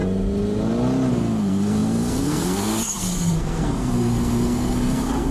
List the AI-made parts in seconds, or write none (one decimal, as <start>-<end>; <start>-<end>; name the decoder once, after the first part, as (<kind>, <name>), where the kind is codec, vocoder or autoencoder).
1.1-5.3 (codec, SNAC)